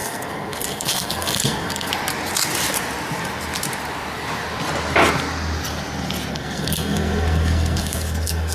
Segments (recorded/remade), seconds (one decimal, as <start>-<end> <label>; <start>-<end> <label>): 0.0-1.9 remade; 1.9-6.3 recorded; 6.3-8.5 remade